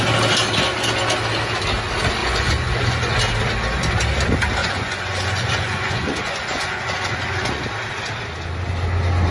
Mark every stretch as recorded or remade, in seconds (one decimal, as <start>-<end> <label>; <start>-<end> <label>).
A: 0.0-2.2 recorded; 2.2-3.2 remade; 3.2-4.6 recorded; 4.6-7.6 remade; 7.6-9.3 recorded